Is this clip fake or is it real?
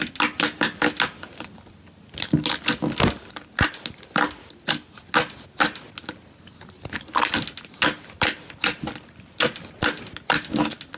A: real